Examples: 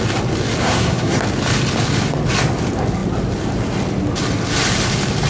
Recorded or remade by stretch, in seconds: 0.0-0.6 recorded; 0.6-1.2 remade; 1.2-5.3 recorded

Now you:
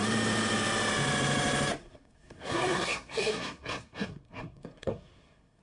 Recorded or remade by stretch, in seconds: 0.0-1.8 recorded; 1.8-5.6 remade

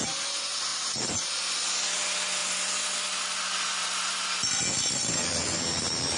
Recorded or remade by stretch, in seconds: 0.0-6.2 recorded

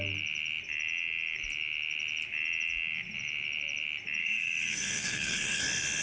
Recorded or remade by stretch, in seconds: 0.0-4.2 recorded; 4.2-5.6 remade; 5.6-6.0 recorded

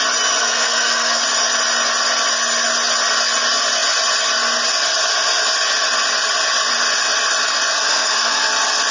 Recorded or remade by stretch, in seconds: 0.0-0.4 recorded; 0.4-1.2 remade; 1.2-7.9 recorded; 7.9-8.4 remade; 8.4-8.9 recorded

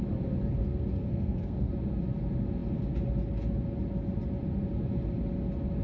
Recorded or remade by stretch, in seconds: 0.0-0.6 recorded; 0.6-1.7 remade; 1.7-5.8 recorded

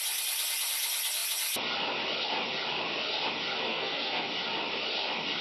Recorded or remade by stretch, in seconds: 0.0-3.7 recorded; 3.7-4.3 remade; 4.3-5.4 recorded